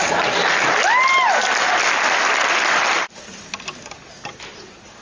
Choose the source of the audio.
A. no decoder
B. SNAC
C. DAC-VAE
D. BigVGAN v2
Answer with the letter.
A